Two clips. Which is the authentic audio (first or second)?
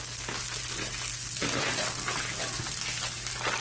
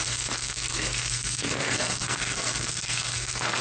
first